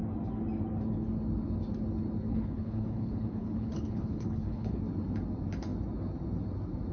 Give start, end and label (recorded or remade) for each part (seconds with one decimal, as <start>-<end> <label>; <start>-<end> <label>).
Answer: 0.0-2.3 recorded; 2.3-4.8 remade; 4.8-6.9 recorded